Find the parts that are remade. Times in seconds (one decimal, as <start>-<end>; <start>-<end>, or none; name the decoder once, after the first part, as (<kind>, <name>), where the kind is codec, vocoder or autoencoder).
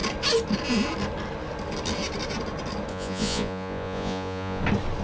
2.9-4.6 (vocoder, Vocos)